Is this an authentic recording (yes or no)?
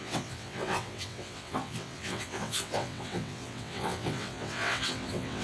no